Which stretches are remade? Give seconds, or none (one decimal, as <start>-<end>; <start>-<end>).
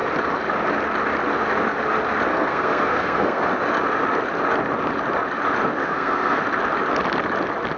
2.3-3.5; 5.8-6.4